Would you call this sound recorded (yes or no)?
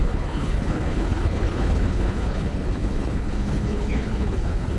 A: no